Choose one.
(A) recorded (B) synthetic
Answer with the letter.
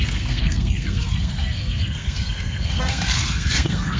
B